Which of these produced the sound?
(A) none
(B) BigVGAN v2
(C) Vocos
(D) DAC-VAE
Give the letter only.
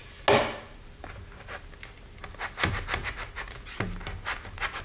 A